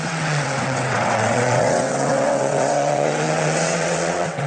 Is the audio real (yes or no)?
no